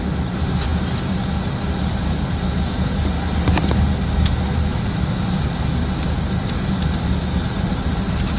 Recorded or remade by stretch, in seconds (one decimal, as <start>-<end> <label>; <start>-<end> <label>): 0.0-8.4 recorded